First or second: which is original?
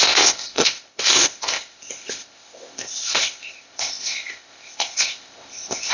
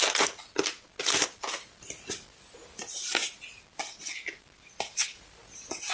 second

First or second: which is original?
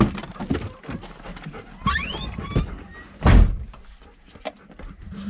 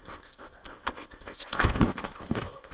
first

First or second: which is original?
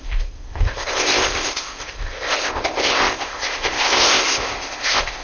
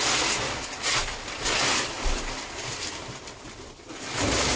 second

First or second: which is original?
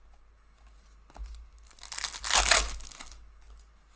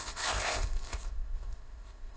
first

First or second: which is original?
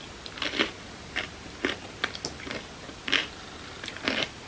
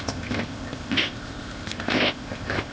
first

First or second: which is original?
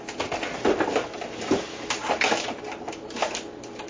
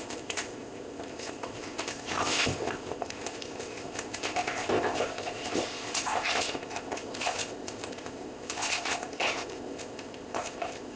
first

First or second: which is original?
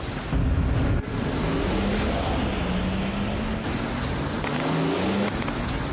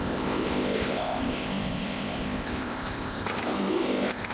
first